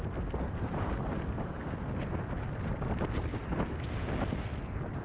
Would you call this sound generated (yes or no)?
no